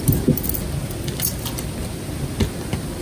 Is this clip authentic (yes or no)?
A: yes